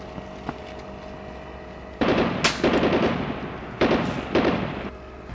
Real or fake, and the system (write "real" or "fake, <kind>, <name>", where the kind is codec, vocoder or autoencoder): real